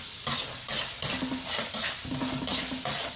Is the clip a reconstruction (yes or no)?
no